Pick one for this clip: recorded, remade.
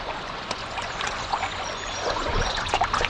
remade